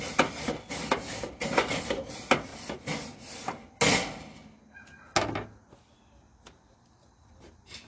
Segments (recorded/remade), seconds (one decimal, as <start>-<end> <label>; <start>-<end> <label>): 0.0-7.9 recorded